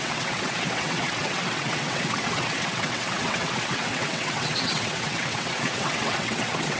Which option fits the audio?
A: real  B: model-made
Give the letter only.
B